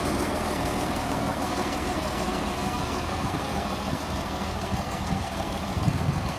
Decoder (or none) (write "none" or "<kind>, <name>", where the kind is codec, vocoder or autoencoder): codec, SNAC